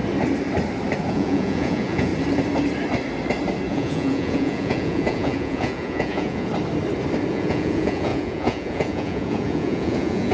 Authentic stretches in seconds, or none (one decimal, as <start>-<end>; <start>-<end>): 0.0-1.1; 2.1-3.7; 6.5-7.3